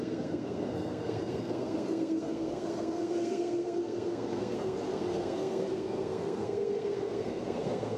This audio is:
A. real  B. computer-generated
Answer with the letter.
B